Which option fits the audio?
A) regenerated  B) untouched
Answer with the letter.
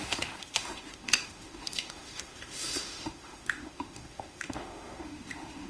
A